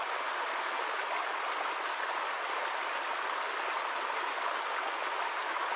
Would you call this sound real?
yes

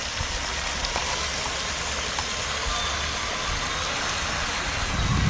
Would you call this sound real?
yes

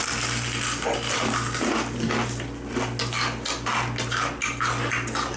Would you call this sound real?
yes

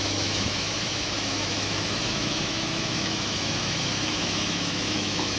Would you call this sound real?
no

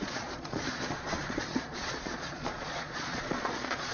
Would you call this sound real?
no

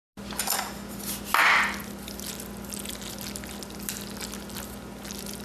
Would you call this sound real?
yes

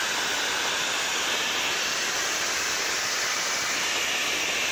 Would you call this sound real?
no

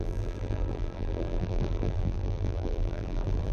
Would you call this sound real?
no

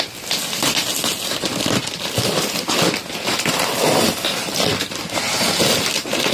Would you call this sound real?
yes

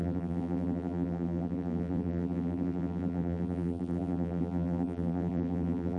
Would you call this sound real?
no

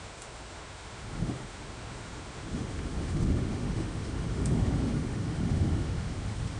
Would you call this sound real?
no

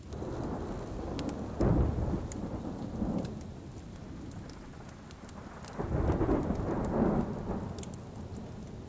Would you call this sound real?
yes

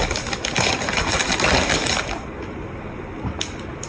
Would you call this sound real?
yes